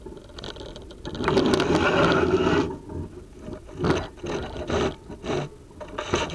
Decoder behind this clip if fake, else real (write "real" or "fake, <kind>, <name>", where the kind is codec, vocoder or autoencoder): real